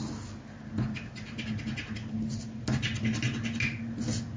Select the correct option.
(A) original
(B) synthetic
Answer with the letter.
A